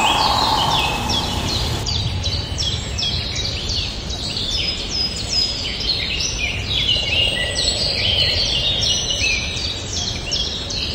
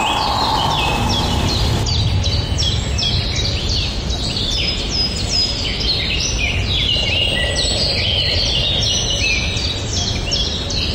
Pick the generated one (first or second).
first